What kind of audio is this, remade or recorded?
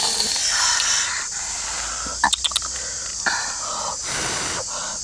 recorded